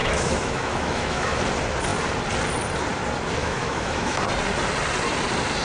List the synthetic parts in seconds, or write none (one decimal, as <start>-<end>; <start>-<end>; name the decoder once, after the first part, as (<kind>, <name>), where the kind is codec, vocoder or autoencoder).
0.0-1.4 (autoencoder, DAC-VAE); 3.4-4.2